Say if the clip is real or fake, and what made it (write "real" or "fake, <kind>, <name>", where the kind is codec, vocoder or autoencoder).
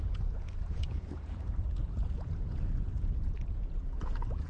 fake, vocoder, Vocos